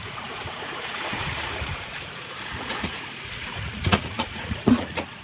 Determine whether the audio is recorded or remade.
remade